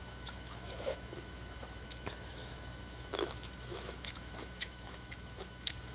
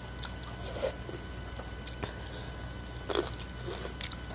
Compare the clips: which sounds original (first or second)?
second